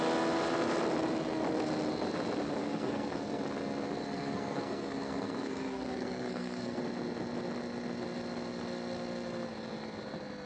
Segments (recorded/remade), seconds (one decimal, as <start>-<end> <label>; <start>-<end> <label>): 0.0-2.6 recorded; 2.6-3.4 remade; 3.4-4.0 recorded; 4.0-6.8 remade; 6.8-10.5 recorded